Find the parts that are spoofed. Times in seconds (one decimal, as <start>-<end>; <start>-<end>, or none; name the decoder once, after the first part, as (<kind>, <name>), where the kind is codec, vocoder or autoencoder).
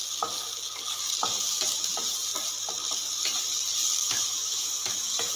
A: 4.0-5.4 (autoencoder, DAC-VAE)